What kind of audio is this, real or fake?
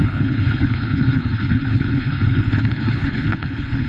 fake